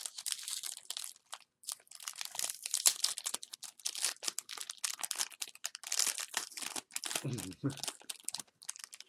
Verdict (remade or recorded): recorded